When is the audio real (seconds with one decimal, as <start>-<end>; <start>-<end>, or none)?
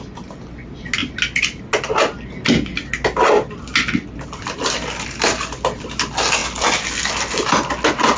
0.0-8.2